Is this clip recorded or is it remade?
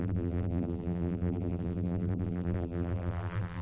remade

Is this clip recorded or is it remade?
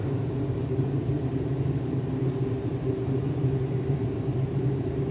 remade